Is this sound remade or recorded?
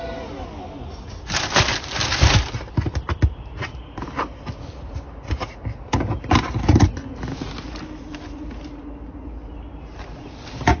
recorded